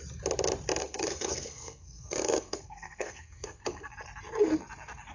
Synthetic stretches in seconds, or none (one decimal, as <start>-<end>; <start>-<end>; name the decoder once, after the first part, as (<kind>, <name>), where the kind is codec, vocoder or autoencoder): 0.8-3.9 (codec, SNAC)